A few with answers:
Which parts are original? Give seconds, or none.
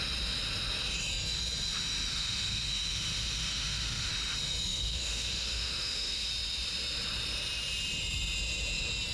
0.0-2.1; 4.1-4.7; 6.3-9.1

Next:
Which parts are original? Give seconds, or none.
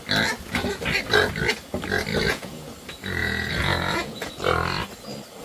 0.0-2.1; 2.7-3.2; 4.3-5.4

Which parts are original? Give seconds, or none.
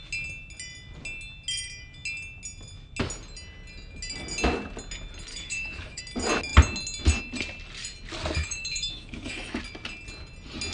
0.0-5.3; 6.0-8.4; 9.6-10.7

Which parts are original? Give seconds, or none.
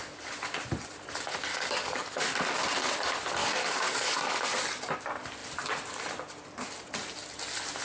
0.0-1.5; 2.2-3.4; 4.5-7.8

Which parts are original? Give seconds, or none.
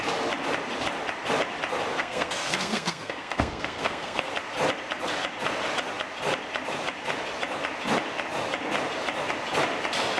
0.0-1.9; 4.3-10.2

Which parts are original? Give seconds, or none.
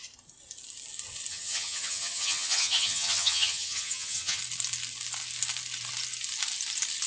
0.0-1.3; 4.4-7.1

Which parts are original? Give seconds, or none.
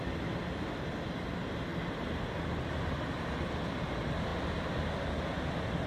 0.0-5.9